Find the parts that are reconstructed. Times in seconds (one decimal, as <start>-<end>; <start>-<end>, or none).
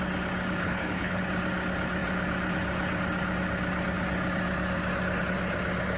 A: 0.6-1.2